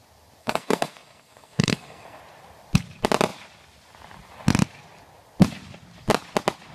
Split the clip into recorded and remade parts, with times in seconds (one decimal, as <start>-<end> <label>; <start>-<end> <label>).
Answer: 0.0-0.4 recorded; 0.4-2.2 remade; 2.2-6.7 recorded

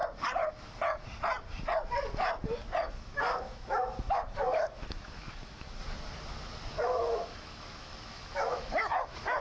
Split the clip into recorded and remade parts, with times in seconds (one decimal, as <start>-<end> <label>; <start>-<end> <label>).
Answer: 0.0-2.9 recorded; 2.9-5.8 remade; 5.8-6.8 recorded; 6.8-9.4 remade

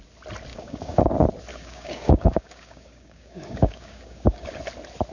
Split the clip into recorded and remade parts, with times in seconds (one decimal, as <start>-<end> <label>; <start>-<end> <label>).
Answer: 0.0-0.5 recorded; 0.5-1.1 remade; 1.1-1.5 recorded; 1.5-4.6 remade; 4.6-5.1 recorded

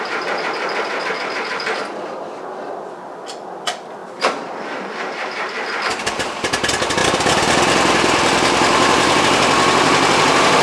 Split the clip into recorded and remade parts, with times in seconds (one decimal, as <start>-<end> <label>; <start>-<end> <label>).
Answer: 0.0-4.0 recorded; 4.0-6.5 remade; 6.5-7.0 recorded; 7.0-9.2 remade; 9.2-10.6 recorded

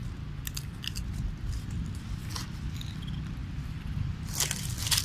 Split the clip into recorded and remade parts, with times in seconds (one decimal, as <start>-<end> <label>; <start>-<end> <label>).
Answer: 0.0-3.4 recorded; 3.4-4.6 remade; 4.6-5.0 recorded

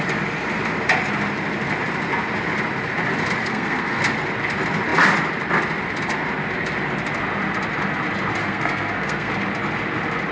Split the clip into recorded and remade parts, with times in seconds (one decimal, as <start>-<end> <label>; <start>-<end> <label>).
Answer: 0.0-3.4 recorded; 3.4-4.0 remade; 4.0-8.4 recorded; 8.4-9.3 remade; 9.3-10.3 recorded